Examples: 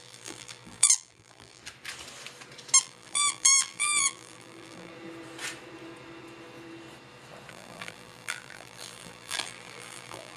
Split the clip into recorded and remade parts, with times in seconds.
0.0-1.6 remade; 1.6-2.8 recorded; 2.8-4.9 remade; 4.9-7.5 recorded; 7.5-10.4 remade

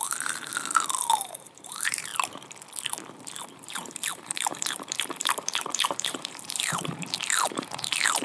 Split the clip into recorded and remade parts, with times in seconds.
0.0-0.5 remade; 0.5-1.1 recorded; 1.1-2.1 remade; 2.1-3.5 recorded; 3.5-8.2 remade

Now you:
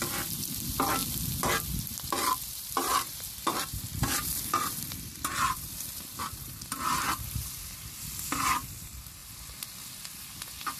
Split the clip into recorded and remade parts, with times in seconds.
0.0-1.0 remade; 1.0-1.9 recorded; 1.9-9.2 remade; 9.2-10.8 recorded

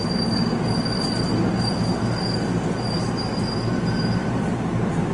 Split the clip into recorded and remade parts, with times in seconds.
0.0-4.2 recorded; 4.2-5.1 remade

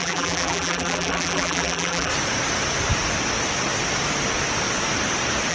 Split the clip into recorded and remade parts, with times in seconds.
0.0-2.1 remade; 2.1-5.5 recorded